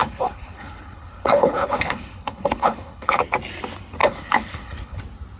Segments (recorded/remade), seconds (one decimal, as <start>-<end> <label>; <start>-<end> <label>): 0.0-3.2 remade; 3.2-4.0 recorded; 4.0-5.0 remade; 5.0-5.4 recorded